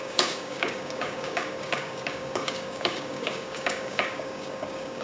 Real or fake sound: fake